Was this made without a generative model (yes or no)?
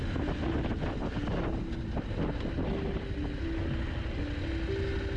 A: yes